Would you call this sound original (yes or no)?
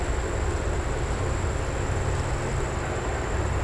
yes